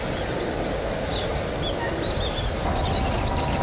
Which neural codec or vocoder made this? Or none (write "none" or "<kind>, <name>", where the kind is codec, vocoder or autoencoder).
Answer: none